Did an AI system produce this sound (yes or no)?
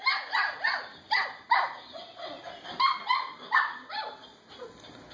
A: no